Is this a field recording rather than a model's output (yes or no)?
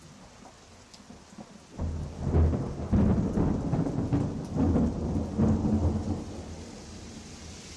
yes